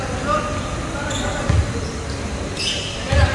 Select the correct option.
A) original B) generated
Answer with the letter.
A